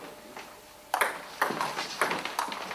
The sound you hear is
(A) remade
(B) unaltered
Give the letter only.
B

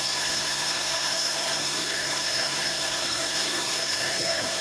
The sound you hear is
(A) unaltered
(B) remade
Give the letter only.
B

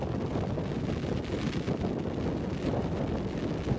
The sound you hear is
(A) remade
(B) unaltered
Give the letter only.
B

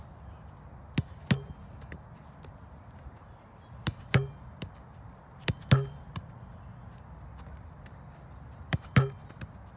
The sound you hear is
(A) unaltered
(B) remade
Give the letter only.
A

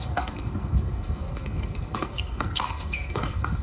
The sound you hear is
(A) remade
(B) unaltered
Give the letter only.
A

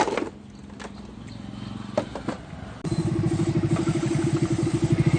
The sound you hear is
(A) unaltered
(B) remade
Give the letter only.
A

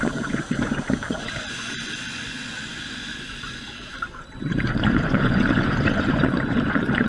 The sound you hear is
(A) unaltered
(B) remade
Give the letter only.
B